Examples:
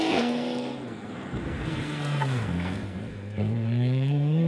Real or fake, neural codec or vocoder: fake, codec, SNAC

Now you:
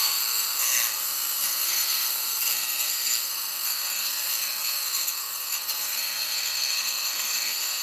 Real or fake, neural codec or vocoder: fake, codec, SNAC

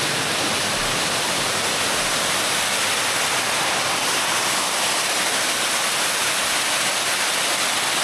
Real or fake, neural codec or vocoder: real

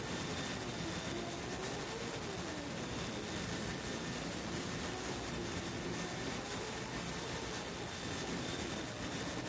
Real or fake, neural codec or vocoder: real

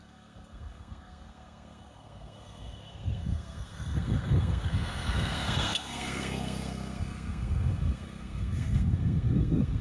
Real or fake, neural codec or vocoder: fake, codec, SNAC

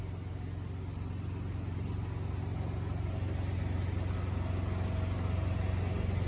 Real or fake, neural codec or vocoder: real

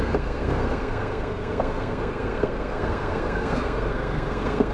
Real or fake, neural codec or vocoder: fake, codec, SNAC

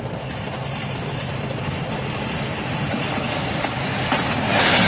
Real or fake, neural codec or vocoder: real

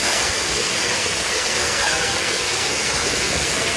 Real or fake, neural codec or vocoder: fake, codec, SNAC